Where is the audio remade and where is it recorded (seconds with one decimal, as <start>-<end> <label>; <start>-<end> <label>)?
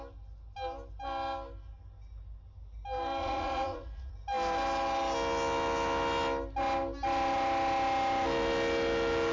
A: 0.0-3.2 recorded; 3.2-4.1 remade; 4.1-9.3 recorded